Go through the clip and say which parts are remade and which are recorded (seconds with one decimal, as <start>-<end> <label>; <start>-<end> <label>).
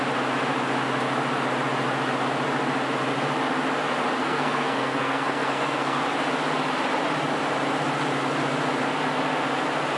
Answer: 0.0-4.2 recorded; 4.2-6.0 remade; 6.0-10.0 recorded